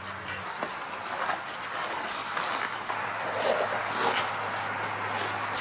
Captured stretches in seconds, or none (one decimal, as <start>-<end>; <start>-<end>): 0.0-5.6